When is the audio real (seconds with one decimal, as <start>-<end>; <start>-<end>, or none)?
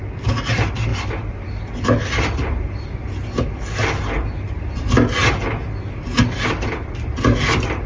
0.0-7.9